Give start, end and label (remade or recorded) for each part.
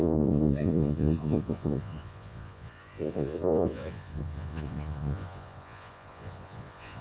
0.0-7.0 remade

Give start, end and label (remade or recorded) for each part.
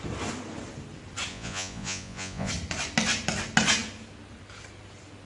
0.0-1.3 recorded; 1.3-2.5 remade; 2.5-5.3 recorded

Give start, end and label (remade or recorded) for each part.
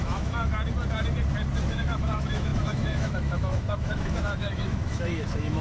0.0-0.5 remade; 0.5-1.7 recorded; 1.7-5.6 remade